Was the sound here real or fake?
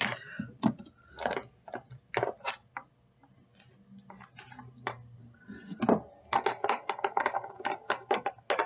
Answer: real